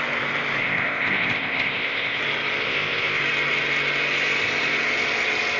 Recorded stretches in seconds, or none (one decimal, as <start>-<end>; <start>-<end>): 0.0-0.6; 2.2-2.6; 3.2-5.6